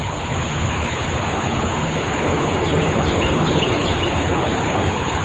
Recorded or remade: remade